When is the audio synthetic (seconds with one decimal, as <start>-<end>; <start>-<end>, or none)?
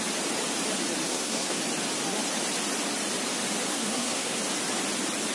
1.1-1.6; 3.7-4.4